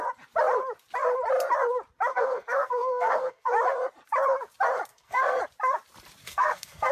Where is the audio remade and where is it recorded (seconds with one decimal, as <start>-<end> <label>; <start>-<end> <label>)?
0.0-2.1 recorded; 2.1-3.5 remade; 3.5-4.9 recorded; 4.9-5.4 remade; 5.4-6.2 recorded; 6.2-6.9 remade

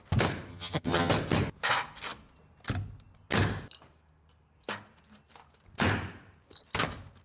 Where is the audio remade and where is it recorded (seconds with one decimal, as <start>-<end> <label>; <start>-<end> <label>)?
0.0-0.5 recorded; 0.5-1.1 remade; 1.1-7.2 recorded